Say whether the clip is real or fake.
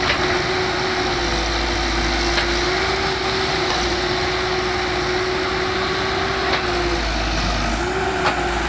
real